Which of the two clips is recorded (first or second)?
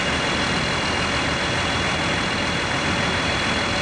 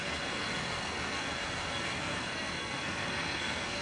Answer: first